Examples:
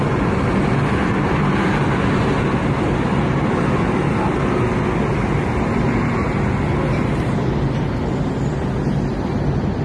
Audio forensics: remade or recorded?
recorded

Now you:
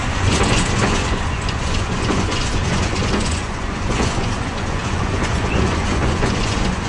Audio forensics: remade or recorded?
remade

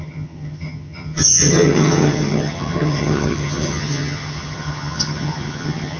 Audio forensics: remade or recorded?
remade